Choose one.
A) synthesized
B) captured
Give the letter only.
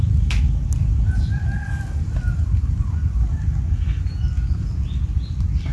B